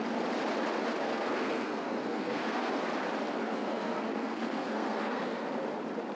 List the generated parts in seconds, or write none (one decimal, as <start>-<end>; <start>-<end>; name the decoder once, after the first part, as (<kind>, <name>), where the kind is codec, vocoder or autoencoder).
1.0-2.9 (codec, SNAC); 3.4-5.5